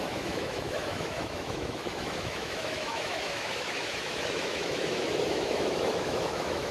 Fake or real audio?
fake